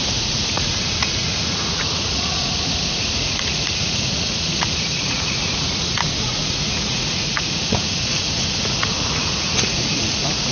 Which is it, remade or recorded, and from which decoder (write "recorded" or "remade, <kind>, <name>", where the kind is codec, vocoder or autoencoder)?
remade, vocoder, Vocos